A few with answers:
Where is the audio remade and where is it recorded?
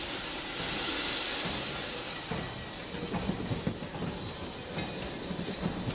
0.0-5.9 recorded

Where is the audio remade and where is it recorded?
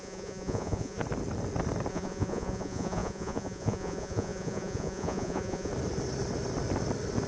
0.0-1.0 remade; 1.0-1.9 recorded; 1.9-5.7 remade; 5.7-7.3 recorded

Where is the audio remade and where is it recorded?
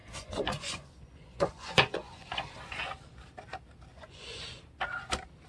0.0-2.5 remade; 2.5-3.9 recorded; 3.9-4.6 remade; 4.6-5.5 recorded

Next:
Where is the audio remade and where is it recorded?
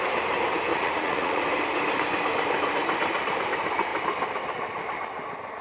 0.0-0.7 recorded; 0.7-1.4 remade; 1.4-5.6 recorded